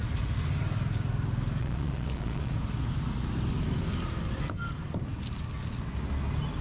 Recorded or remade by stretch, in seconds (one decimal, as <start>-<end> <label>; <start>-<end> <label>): 0.0-1.6 recorded; 1.6-2.5 remade; 2.5-6.6 recorded